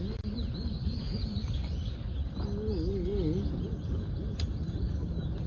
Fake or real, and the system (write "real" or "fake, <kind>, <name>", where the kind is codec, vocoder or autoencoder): real